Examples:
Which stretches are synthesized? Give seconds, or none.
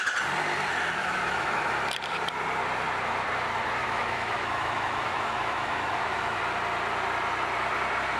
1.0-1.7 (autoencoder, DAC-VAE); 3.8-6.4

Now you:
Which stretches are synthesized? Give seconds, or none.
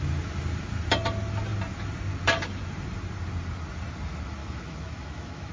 4.4-5.5 (autoencoder, DAC-VAE)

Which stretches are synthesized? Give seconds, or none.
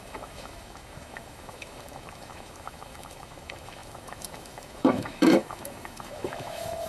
0.0-6.9 (autoencoder, DAC-VAE)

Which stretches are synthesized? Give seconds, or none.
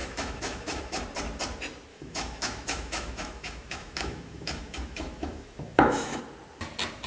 0.0-1.0 (autoencoder, DAC-VAE); 1.9-6.2